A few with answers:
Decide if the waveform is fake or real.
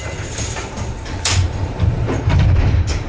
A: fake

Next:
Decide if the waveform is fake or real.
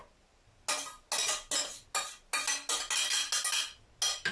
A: real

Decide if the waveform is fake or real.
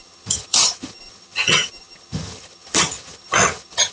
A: fake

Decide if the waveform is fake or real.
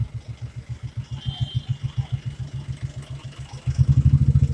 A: real